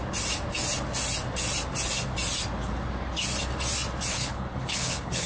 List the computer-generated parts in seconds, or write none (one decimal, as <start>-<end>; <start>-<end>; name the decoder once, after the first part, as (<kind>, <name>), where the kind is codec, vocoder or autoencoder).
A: 4.1-5.3 (codec, HILCodec)